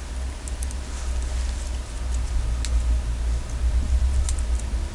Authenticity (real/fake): real